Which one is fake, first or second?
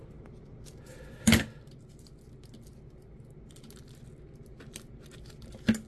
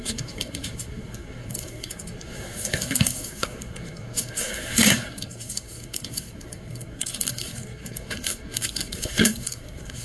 second